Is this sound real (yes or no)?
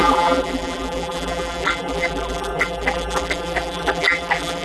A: no